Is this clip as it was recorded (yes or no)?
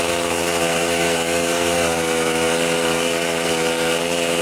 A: no